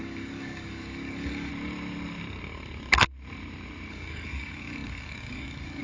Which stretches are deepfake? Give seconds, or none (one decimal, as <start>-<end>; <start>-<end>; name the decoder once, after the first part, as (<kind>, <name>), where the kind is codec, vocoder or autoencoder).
0.0-1.5 (codec, DAC); 3.9-5.8

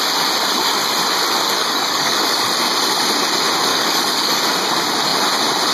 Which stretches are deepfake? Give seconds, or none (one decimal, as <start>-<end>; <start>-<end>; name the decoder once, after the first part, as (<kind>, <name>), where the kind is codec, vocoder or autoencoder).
1.6-2.4 (codec, DAC); 3.7-4.4

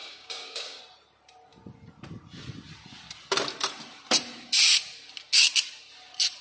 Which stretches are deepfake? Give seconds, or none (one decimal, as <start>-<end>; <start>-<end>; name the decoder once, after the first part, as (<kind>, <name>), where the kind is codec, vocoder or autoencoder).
0.0-0.8 (codec, DAC)

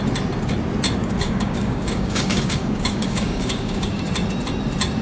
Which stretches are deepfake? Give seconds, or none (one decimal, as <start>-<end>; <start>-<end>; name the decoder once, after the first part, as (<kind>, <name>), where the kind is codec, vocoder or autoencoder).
1.0-4.0 (codec, DAC)

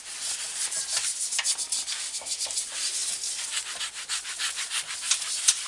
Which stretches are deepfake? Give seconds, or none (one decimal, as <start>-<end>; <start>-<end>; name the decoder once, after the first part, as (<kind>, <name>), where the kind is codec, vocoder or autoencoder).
none

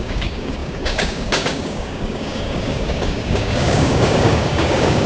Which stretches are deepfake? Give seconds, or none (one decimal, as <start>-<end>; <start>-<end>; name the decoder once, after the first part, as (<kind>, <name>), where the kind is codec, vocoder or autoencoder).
0.0-5.1 (codec, DAC)

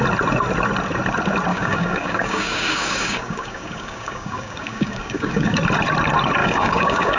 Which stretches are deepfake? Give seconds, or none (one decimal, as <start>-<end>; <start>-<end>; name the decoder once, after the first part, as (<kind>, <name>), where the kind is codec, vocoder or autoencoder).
1.5-5.6 (codec, DAC); 6.4-7.2